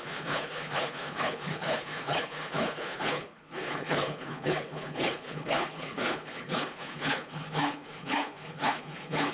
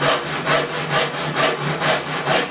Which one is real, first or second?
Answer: second